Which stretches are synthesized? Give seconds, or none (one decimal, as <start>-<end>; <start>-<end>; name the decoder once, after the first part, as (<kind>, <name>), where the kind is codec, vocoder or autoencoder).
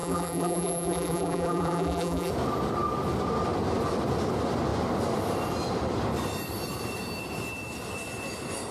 0.0-2.3 (vocoder, BigVGAN v2)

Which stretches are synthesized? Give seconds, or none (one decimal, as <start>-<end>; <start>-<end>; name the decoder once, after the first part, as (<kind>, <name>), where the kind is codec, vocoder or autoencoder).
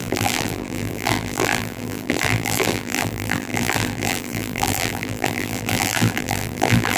0.0-7.0 (vocoder, BigVGAN v2)